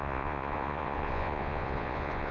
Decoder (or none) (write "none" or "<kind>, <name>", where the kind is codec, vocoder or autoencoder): vocoder, Vocos